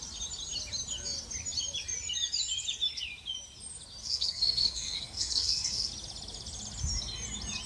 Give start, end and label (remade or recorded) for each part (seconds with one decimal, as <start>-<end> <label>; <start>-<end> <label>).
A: 0.0-4.0 recorded; 4.0-5.9 remade; 5.9-7.7 recorded